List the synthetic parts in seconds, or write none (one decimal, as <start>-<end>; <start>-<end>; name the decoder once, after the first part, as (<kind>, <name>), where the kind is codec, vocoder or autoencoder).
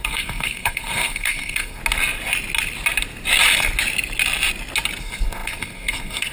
0.0-1.8 (codec, SNAC); 5.0-6.3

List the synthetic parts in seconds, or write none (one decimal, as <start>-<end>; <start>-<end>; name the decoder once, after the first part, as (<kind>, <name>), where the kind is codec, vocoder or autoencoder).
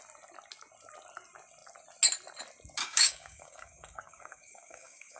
2.8-5.2 (codec, DAC)